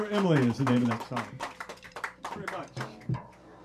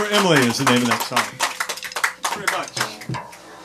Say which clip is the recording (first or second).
second